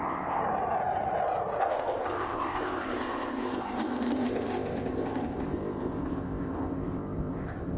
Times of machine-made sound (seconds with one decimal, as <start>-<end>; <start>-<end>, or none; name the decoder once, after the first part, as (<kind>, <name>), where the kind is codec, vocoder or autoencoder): 0.0-0.4 (codec, ZipCodec); 1.6-7.8